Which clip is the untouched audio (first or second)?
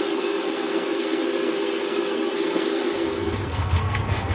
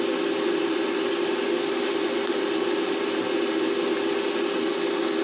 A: second